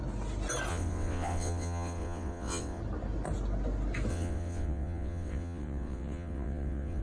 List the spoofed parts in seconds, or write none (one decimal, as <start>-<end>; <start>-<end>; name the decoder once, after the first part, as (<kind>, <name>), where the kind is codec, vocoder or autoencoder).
0.7-2.8 (vocoder, WaveNeXt); 4.1-7.0